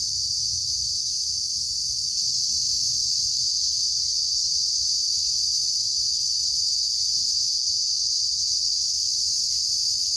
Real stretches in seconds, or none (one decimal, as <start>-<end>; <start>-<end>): 5.5-6.3; 7.7-8.3